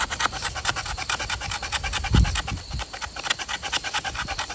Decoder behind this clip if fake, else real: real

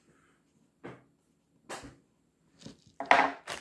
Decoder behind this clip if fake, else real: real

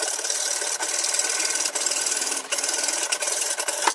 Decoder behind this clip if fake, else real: fake, vocoder, BigVGAN v2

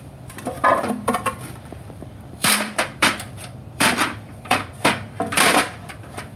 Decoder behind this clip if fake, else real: fake, vocoder, BigVGAN v2